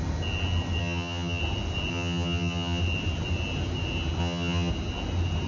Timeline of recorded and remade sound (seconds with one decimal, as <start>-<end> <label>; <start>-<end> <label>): 0.0-0.8 recorded; 0.8-1.4 remade; 1.4-1.9 recorded; 1.9-2.8 remade; 2.8-4.2 recorded; 4.2-4.7 remade; 4.7-5.5 recorded